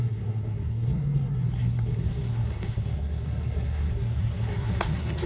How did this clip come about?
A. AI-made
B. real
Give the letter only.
A